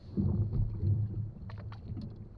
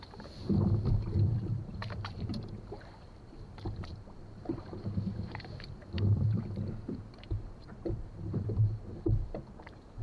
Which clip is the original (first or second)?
first